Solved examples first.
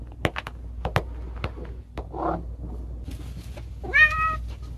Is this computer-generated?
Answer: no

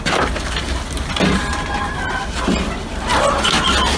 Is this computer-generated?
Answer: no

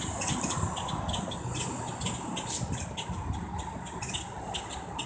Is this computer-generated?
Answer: no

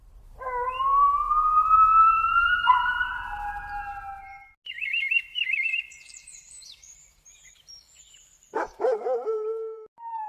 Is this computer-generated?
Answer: no